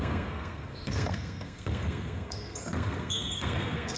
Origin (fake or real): fake